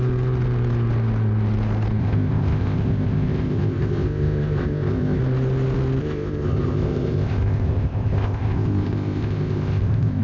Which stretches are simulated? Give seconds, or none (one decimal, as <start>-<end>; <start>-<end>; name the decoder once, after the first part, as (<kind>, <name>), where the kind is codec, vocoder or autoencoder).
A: 2.0-5.2 (codec, ZipCodec); 6.0-10.2

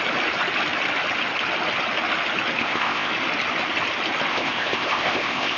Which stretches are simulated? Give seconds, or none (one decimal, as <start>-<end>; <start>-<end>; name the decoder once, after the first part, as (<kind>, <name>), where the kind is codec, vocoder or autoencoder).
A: 2.6-3.1 (codec, ZipCodec); 4.3-5.6

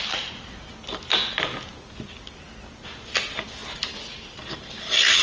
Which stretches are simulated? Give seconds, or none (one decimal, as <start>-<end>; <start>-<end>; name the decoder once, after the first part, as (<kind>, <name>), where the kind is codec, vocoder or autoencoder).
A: none